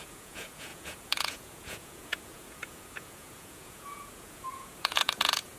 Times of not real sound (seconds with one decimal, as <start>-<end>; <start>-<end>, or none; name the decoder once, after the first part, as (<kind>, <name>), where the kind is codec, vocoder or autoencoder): 0.0-5.6 (vocoder, Vocos)